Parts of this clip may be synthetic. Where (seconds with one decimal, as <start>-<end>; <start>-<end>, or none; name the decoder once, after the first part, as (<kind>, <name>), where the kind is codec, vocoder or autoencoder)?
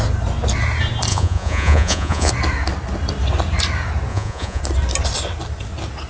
1.1-2.3 (vocoder, Vocos); 4.1-4.6